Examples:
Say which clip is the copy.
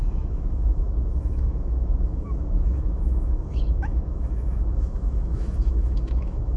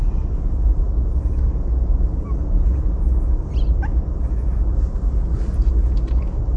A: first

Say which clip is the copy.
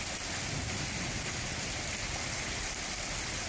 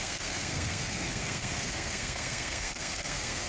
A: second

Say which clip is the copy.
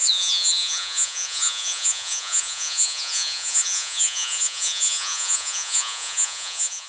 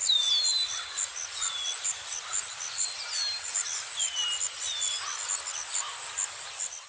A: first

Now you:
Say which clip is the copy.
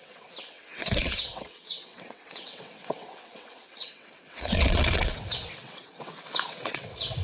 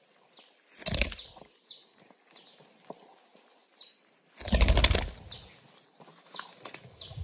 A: first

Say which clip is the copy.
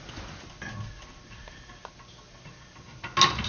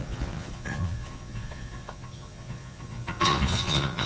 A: second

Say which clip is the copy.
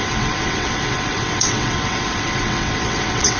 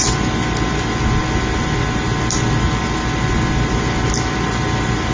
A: first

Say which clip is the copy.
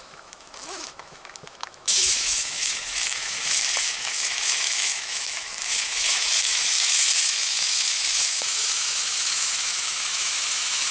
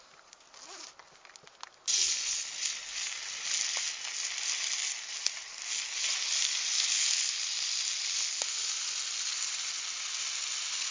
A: first